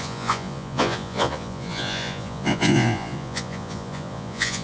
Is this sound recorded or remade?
remade